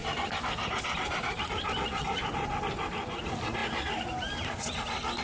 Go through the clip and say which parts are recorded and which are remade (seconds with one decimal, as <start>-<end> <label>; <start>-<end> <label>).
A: 0.0-5.2 recorded